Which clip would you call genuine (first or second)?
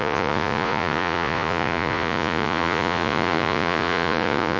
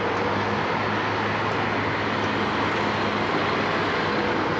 second